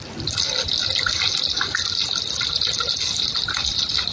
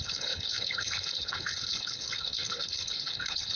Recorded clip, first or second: first